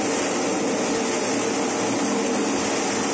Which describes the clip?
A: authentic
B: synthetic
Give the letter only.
A